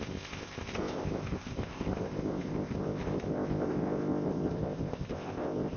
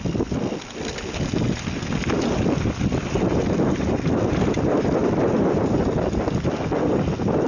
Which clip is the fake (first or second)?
first